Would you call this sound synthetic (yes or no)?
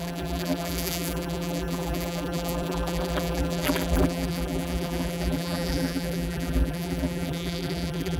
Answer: yes